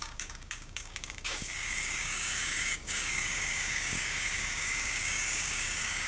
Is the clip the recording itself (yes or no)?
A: no